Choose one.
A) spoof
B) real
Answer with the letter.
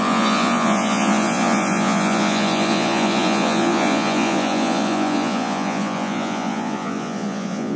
A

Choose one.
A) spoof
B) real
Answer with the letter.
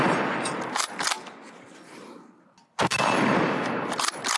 B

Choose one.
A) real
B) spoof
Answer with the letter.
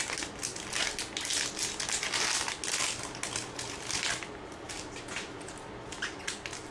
A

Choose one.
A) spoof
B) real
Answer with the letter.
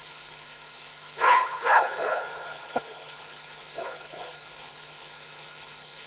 A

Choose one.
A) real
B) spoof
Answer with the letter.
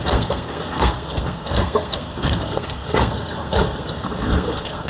B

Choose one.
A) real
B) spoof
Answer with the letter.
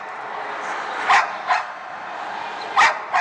A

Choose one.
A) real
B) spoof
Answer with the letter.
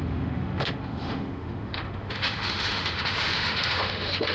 B